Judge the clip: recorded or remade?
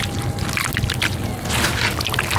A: recorded